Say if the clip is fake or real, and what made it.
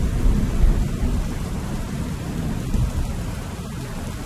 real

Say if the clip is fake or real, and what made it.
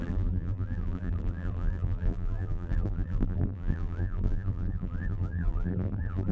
fake, vocoder, BigVGAN v2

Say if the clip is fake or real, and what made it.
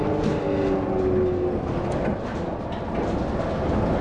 real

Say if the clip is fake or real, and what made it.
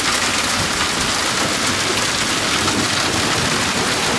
real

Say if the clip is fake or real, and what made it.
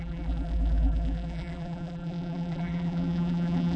fake, vocoder, BigVGAN v2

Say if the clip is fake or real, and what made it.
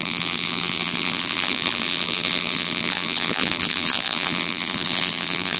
fake, vocoder, BigVGAN v2